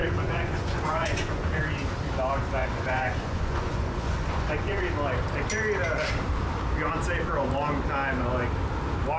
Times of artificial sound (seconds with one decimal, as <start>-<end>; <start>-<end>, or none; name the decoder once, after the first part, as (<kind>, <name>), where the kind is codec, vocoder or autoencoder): 0.0-1.6 (vocoder, Vocos); 2.6-4.8